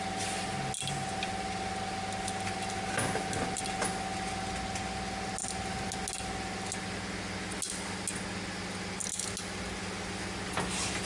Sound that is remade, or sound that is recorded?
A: recorded